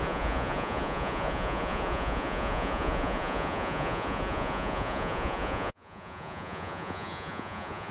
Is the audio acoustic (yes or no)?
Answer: no